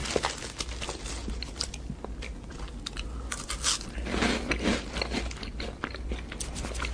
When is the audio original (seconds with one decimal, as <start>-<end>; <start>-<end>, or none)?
0.0-6.9